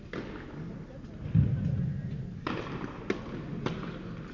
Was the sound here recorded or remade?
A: recorded